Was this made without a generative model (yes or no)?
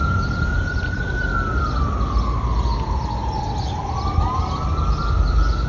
yes